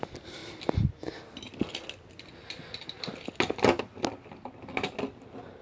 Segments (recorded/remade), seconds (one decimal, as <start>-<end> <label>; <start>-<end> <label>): 0.0-5.6 recorded